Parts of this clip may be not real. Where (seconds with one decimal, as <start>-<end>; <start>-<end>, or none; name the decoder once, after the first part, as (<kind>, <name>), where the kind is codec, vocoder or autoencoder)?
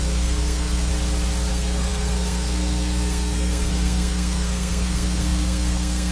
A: 0.0-0.9 (codec, SNAC); 1.5-6.1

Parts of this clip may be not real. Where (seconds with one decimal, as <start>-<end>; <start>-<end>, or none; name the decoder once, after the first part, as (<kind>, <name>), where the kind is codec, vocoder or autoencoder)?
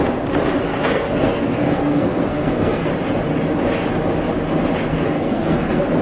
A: 0.7-2.9 (codec, SNAC); 4.9-6.0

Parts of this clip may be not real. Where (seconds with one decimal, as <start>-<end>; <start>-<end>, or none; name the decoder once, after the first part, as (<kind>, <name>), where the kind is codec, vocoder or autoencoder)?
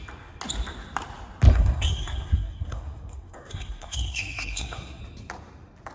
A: 1.5-5.0 (codec, SNAC)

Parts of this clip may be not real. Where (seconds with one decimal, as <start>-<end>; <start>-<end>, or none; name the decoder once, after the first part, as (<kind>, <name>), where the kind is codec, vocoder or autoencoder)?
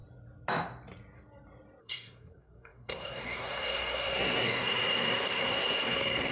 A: 1.8-6.3 (codec, SNAC)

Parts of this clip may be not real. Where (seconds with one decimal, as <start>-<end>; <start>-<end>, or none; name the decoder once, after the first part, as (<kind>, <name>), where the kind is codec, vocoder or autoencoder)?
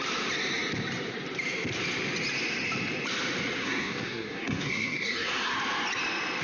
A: 3.6-5.5 (codec, SNAC)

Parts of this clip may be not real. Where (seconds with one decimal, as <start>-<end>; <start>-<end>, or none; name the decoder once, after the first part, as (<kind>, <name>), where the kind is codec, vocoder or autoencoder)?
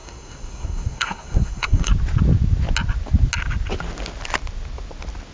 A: 0.0-1.9 (codec, SNAC)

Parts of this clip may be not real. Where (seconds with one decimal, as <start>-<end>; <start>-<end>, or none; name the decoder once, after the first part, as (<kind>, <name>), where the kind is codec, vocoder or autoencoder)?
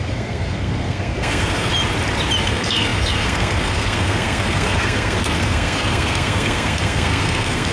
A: 0.0-1.7 (codec, SNAC); 2.4-7.7